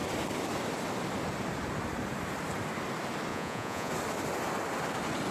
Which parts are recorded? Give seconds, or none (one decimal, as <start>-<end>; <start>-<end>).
0.0-3.3; 3.9-5.3